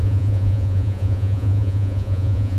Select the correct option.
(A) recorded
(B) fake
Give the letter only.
B